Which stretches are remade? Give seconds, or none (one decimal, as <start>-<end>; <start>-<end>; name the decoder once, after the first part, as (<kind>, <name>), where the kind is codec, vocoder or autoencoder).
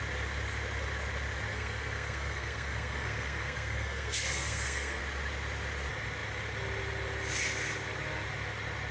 1.5-5.0 (codec, SNAC)